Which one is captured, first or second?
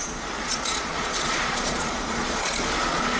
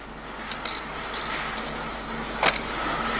second